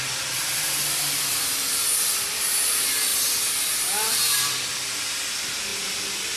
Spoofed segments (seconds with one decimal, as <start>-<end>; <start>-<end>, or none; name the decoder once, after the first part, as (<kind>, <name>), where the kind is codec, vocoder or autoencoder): none